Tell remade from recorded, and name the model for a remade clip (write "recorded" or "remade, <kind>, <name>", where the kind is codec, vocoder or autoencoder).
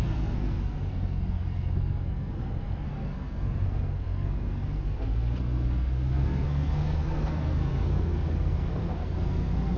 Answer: remade, codec, SNAC